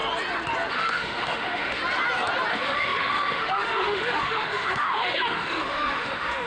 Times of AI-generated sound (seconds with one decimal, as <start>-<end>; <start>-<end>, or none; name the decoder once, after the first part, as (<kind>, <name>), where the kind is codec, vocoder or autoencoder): 0.7-1.8 (autoencoder, DAC-VAE); 2.5-6.5